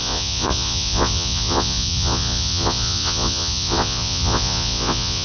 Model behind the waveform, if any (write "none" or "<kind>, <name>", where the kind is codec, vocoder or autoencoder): vocoder, Vocos